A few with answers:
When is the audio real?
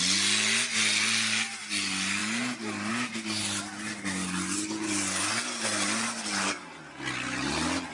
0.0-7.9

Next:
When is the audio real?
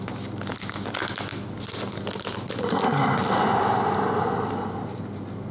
0.0-5.5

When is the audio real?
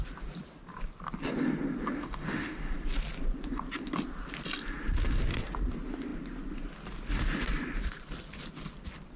0.0-2.0; 2.6-9.2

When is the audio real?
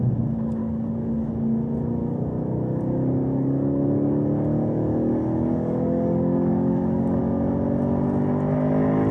0.0-0.6; 1.3-2.0; 7.2-9.1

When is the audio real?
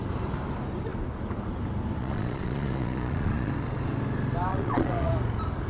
0.0-2.0; 3.5-4.5; 5.1-5.7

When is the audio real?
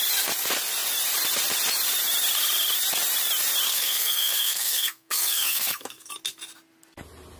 0.0-3.7; 6.1-7.4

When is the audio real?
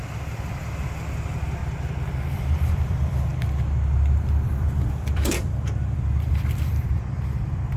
1.6-2.3; 3.3-4.5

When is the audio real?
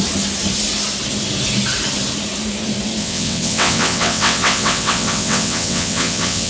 0.0-3.0